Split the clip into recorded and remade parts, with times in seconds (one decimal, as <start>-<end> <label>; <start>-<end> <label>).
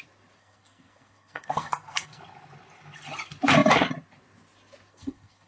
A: 0.0-0.4 recorded; 0.4-2.2 remade; 2.2-4.9 recorded; 4.9-5.5 remade